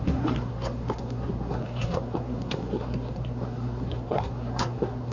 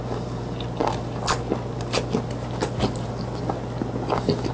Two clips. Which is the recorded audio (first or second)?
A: second